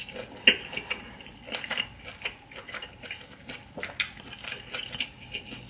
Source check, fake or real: real